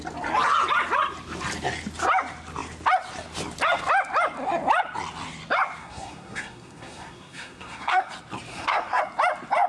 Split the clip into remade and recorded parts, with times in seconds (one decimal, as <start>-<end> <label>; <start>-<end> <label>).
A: 0.0-5.8 recorded; 5.8-8.1 remade; 8.1-8.5 recorded; 8.5-9.0 remade; 9.0-9.7 recorded